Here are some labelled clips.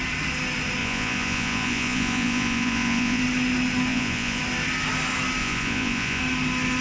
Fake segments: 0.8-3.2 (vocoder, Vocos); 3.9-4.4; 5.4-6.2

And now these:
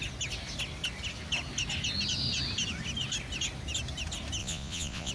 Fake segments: 4.4-5.1 (vocoder, Vocos)

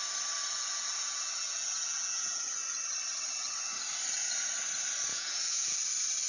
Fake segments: 0.4-2.4 (vocoder, Vocos); 5.1-5.8

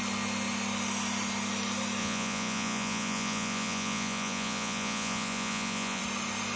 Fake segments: 2.0-6.0 (vocoder, Vocos)

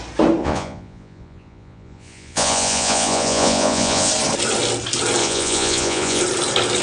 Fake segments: 0.4-4.1 (vocoder, Vocos); 5.2-6.2

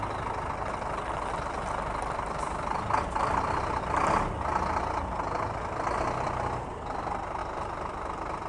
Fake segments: none

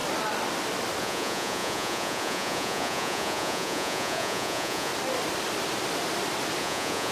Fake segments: 1.0-4.9 (vocoder, Vocos); 6.6-7.1